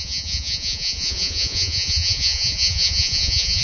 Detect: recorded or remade remade